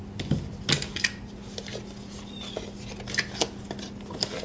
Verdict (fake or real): real